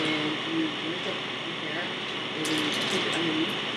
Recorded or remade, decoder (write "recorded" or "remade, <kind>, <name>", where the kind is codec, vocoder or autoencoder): recorded